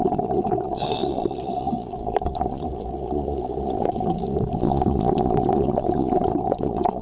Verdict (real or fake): fake